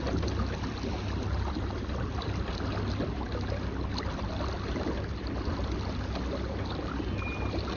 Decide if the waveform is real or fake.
real